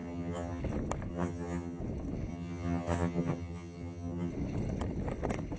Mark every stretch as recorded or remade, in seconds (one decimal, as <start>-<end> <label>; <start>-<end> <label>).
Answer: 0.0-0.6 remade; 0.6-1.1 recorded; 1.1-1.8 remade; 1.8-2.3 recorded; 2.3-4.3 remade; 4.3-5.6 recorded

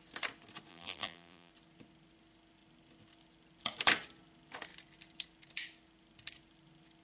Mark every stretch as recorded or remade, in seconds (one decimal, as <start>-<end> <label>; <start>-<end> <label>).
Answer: 0.0-0.7 recorded; 0.7-1.5 remade; 1.5-7.0 recorded

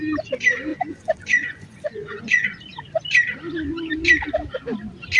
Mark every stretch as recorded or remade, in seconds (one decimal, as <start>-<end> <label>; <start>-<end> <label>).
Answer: 0.0-0.7 recorded; 0.7-2.6 remade; 2.6-5.2 recorded

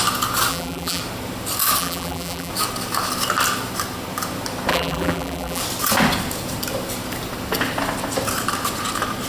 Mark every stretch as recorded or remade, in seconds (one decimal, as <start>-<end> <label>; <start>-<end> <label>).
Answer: 0.0-0.5 recorded; 0.5-1.0 remade; 1.0-1.8 recorded; 1.8-2.5 remade; 2.5-4.7 recorded; 4.7-5.6 remade; 5.6-9.3 recorded

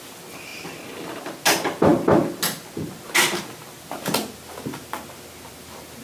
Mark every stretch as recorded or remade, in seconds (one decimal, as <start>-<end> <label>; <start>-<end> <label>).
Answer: 0.0-6.0 recorded

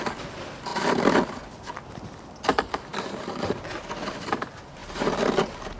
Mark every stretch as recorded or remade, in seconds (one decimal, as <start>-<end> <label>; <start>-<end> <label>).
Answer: 0.0-2.9 recorded; 2.9-3.8 remade; 3.8-4.8 recorded; 4.8-5.8 remade

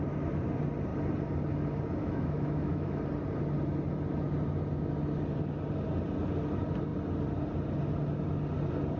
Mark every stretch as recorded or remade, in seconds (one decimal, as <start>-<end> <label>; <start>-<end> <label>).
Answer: 0.0-2.0 recorded; 2.0-3.0 remade; 3.0-9.0 recorded

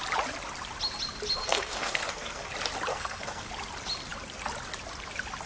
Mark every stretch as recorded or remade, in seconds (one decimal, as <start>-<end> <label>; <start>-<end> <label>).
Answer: 0.0-1.4 recorded; 1.4-2.5 remade; 2.5-2.9 recorded; 2.9-3.5 remade; 3.5-5.5 recorded